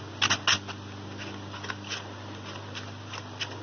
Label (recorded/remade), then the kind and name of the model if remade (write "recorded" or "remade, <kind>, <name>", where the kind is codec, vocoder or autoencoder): recorded